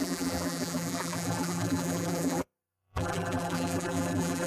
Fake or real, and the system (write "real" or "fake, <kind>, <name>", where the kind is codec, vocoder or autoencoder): fake, vocoder, BigVGAN v2